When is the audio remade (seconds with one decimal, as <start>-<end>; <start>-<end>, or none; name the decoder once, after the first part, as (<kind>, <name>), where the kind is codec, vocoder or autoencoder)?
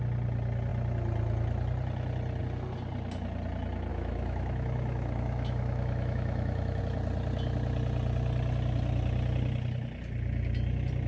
3.9-6.8 (autoencoder, DAC-VAE)